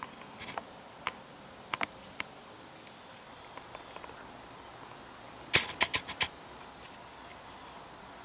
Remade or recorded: recorded